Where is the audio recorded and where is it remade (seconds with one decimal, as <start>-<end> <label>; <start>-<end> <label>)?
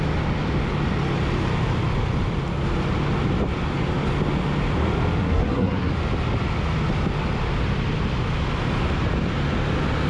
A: 0.0-5.2 recorded; 5.2-5.9 remade; 5.9-10.1 recorded